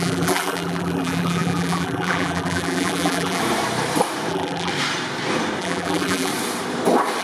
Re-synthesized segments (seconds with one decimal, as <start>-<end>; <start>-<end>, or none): 0.0-3.4; 4.3-4.7; 5.6-6.3

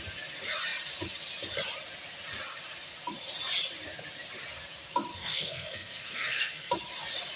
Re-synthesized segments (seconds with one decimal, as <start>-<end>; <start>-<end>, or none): 5.1-6.7